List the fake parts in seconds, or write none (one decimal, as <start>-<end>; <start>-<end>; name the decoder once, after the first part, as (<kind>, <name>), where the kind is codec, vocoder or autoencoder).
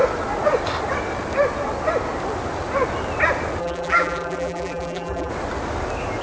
3.6-5.3 (vocoder, BigVGAN v2)